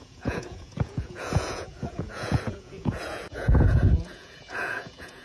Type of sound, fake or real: fake